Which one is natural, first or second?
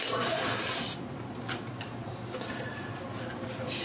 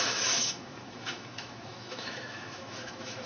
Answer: first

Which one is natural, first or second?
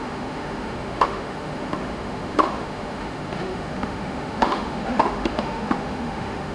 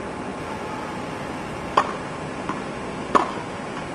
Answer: second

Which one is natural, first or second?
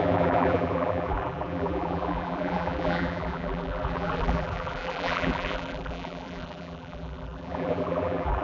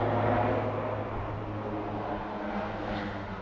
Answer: second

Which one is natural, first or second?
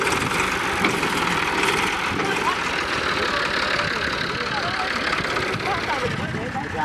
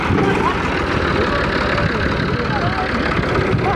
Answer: second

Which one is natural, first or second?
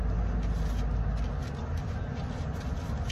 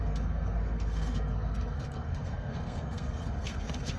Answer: first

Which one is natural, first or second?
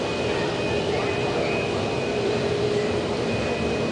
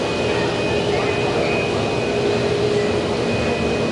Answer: second